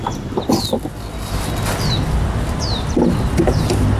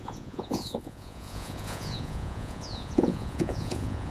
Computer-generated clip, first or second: second